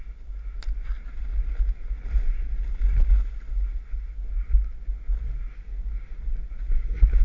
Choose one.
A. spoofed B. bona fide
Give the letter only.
B